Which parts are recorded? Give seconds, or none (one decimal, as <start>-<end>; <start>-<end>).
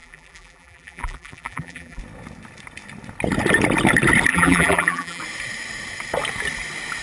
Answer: 2.0-4.3; 5.2-7.0